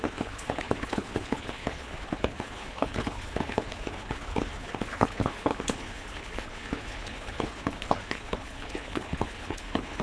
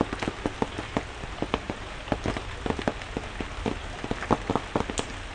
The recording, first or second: second